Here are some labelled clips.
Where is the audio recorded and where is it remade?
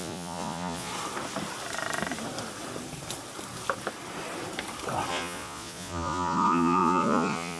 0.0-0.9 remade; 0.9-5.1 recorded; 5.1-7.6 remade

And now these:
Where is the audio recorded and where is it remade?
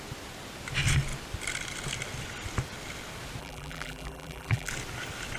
0.0-3.4 recorded; 3.4-4.7 remade; 4.7-5.4 recorded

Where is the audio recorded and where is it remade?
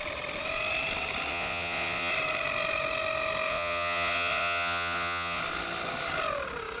0.0-1.3 recorded; 1.3-2.1 remade; 2.1-3.5 recorded; 3.5-5.4 remade; 5.4-6.8 recorded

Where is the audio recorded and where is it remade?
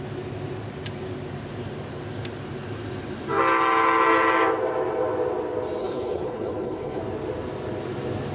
0.0-5.8 recorded; 5.8-7.0 remade; 7.0-8.3 recorded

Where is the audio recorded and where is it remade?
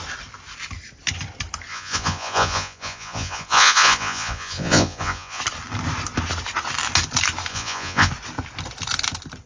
0.0-1.7 recorded; 1.7-5.4 remade; 5.4-7.5 recorded; 7.5-8.1 remade; 8.1-9.5 recorded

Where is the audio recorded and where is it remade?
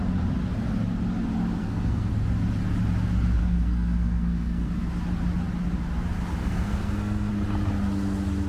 0.0-1.6 recorded; 1.6-2.1 remade; 2.1-3.4 recorded; 3.4-4.7 remade; 4.7-6.4 recorded; 6.4-7.3 remade; 7.3-8.5 recorded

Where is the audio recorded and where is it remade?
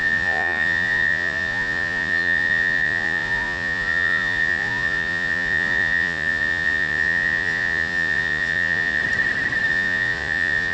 0.0-9.0 remade; 9.0-9.7 recorded; 9.7-10.7 remade